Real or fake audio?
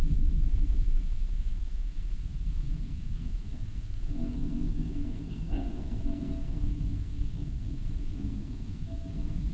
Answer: fake